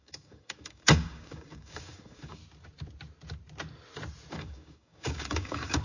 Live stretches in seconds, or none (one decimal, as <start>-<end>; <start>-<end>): 2.4-4.3